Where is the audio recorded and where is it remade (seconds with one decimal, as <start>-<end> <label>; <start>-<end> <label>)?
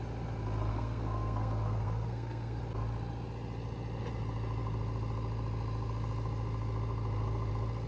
0.0-0.7 recorded; 0.7-2.6 remade; 2.6-7.9 recorded